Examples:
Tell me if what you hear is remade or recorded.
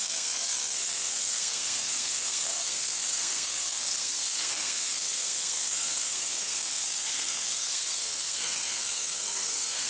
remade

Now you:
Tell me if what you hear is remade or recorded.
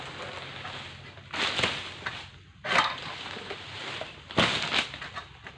recorded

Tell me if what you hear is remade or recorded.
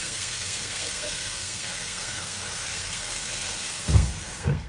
remade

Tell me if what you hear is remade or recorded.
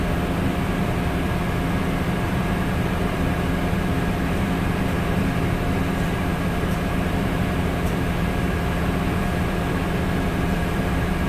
recorded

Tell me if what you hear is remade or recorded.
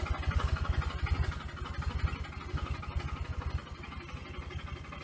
recorded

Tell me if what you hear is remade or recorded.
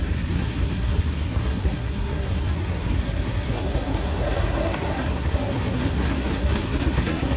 remade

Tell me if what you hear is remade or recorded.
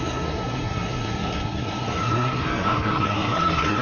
remade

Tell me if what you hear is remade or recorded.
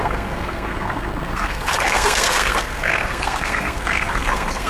remade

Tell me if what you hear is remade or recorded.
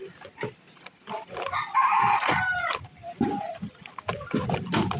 recorded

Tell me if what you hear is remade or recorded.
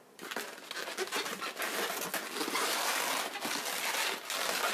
recorded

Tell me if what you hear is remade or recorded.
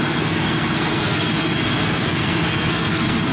remade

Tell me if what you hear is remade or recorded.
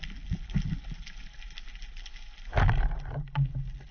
recorded